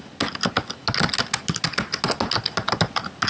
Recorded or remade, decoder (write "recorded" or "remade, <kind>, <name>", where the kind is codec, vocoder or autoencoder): recorded